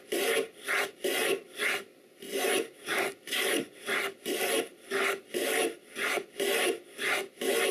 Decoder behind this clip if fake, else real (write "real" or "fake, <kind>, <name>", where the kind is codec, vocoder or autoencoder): real